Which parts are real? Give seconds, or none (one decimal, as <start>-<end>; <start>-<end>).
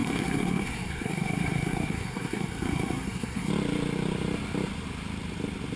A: 3.5-5.8